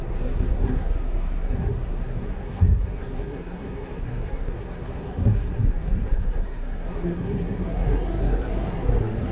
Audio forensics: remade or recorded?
remade